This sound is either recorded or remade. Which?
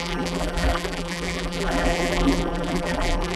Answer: remade